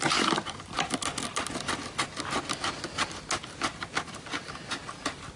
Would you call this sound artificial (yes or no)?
no